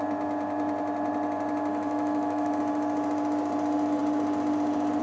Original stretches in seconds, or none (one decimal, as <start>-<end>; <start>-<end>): 0.0-1.7; 2.6-5.0